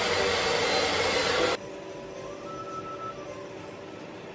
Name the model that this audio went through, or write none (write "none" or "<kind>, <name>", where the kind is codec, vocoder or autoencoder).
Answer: none